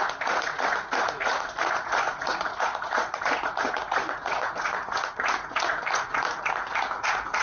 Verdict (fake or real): fake